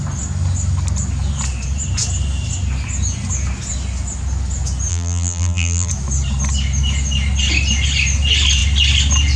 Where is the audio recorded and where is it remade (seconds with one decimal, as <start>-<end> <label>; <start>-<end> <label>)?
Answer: 0.0-4.9 recorded; 4.9-5.9 remade; 5.9-9.4 recorded